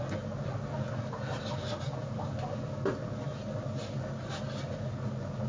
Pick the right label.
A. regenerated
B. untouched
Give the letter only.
B